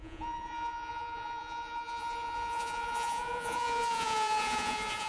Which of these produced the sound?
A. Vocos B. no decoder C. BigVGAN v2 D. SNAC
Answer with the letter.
A